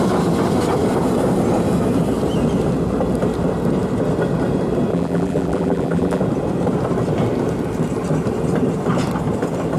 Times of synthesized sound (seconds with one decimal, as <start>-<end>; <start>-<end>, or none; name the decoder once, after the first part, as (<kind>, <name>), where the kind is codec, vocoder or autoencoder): 4.9-6.2 (vocoder, BigVGAN v2)